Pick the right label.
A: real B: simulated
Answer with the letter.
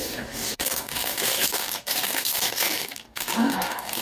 B